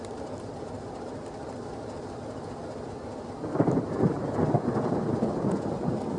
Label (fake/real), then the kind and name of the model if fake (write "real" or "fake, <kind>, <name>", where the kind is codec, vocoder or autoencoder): real